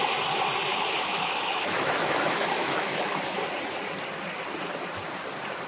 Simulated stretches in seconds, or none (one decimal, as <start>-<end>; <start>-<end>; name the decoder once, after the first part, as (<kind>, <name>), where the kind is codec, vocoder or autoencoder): 0.7-3.2 (autoencoder, DAC-VAE)